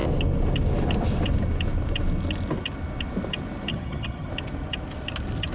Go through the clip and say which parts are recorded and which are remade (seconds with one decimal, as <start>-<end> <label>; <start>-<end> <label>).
0.0-3.7 recorded; 3.7-4.3 remade; 4.3-5.5 recorded